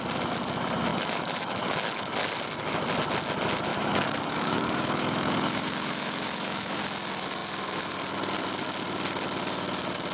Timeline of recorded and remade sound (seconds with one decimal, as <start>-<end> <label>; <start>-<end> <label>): 0.0-0.9 recorded; 0.9-2.1 remade; 2.1-3.7 recorded; 3.7-6.8 remade; 6.8-10.1 recorded